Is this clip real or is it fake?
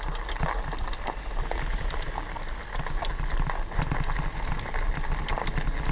real